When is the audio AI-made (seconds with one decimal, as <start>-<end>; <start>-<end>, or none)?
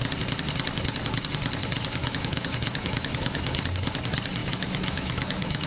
2.0-3.6; 4.4-5.7